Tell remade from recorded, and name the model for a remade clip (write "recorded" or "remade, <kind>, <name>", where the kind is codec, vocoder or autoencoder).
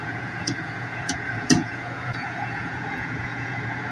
remade, vocoder, Vocos